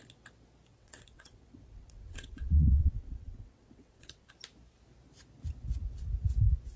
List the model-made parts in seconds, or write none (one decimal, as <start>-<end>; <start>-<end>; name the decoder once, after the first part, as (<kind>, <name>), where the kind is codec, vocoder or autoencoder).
0.7-4.3 (vocoder, WaveNeXt)